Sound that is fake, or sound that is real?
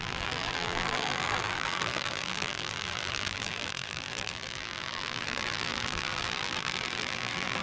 fake